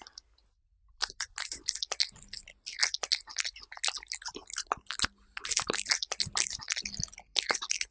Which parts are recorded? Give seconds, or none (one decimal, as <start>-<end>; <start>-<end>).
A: 0.0-0.9; 1.7-7.9